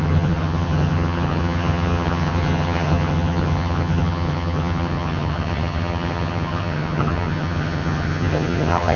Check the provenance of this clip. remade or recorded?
remade